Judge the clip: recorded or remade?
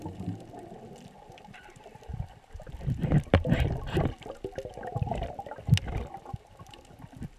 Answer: recorded